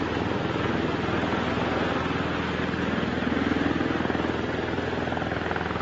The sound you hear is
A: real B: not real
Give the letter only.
A